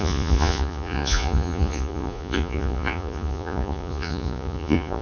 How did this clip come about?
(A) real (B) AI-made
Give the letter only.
B